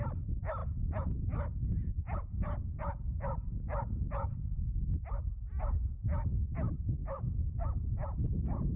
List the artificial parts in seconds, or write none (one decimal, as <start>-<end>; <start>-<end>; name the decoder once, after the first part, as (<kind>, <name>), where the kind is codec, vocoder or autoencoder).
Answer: 7.0-7.9 (autoencoder, DAC-VAE)